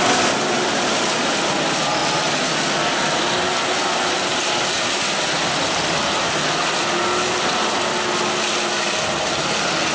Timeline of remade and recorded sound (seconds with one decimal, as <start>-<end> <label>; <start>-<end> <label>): 0.0-9.9 recorded